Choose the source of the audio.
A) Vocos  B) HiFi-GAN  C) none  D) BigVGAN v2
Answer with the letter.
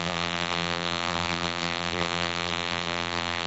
D